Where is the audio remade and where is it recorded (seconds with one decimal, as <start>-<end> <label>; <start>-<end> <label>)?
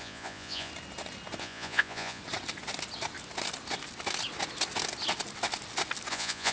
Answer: 0.0-0.7 remade; 0.7-1.4 recorded; 1.4-2.2 remade; 2.2-6.1 recorded; 6.1-6.5 remade